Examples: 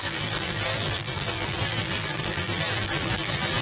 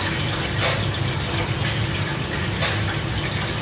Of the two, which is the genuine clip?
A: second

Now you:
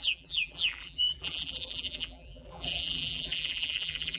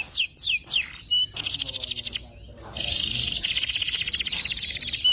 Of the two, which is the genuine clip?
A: second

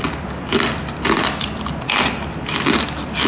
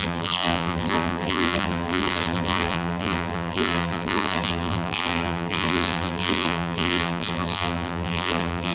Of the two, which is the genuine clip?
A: first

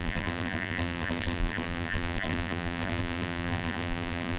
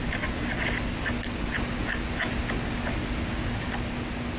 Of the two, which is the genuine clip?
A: second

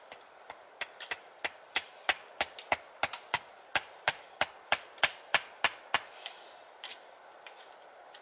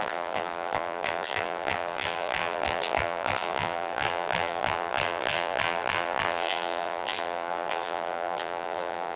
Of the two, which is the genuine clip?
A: first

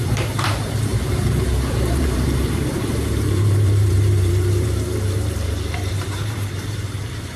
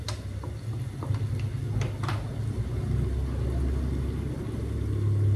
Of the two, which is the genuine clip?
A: second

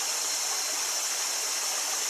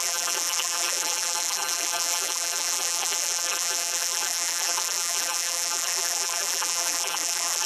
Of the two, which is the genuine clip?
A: first